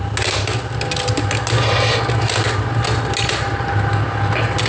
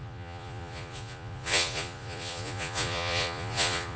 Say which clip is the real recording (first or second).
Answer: first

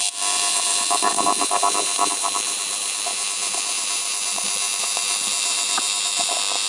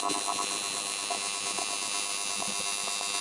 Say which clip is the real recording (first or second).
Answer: second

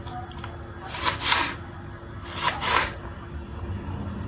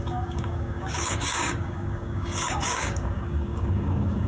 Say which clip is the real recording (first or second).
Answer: first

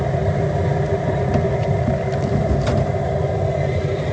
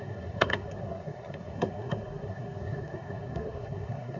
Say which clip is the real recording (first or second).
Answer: first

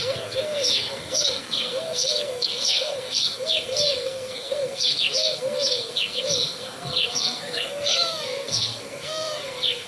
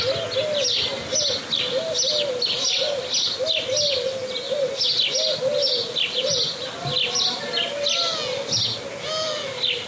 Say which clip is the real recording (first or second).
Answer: second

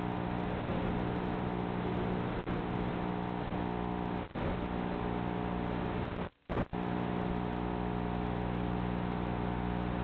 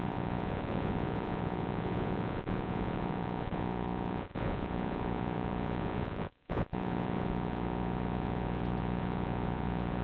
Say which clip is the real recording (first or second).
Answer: first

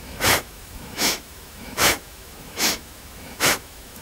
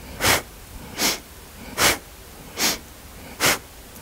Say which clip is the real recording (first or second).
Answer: second